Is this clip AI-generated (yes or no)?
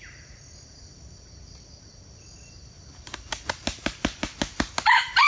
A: no